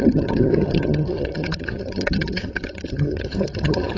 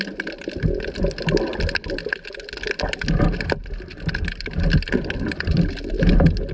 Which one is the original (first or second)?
second